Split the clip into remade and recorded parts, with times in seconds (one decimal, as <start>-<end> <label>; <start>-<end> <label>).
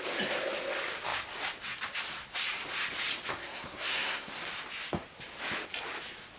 0.0-3.3 recorded; 3.3-4.3 remade; 4.3-6.4 recorded